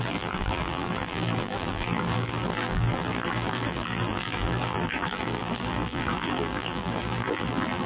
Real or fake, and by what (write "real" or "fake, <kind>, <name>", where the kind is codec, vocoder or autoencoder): fake, vocoder, BigVGAN v2